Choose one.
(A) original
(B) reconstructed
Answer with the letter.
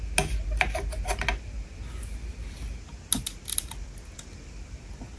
A